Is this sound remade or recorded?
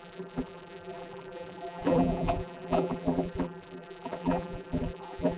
remade